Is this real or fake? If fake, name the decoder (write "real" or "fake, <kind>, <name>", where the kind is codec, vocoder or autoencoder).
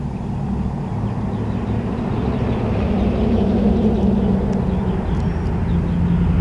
real